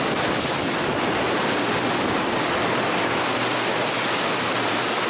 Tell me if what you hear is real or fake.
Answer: real